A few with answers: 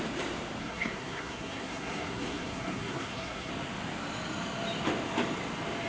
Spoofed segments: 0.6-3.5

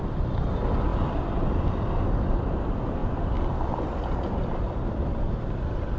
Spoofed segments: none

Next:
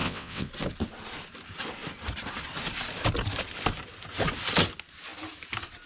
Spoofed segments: 0.0-0.5